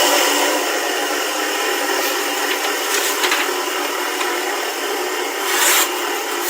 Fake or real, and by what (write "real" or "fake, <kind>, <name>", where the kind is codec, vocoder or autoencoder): real